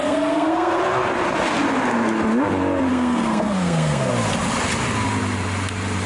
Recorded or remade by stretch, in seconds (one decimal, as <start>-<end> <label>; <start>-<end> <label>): 0.0-0.8 remade; 0.8-2.9 recorded; 2.9-4.1 remade; 4.1-6.1 recorded